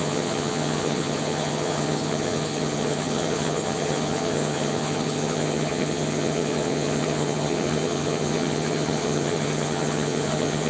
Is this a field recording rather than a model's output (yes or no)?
no